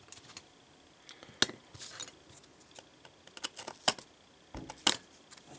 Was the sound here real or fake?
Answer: real